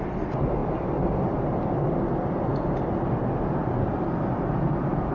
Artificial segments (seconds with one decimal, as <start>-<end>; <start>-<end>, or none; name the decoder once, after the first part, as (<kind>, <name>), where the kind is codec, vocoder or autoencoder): none